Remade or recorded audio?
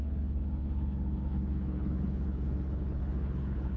remade